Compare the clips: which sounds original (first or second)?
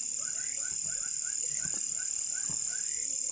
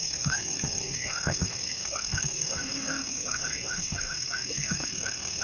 first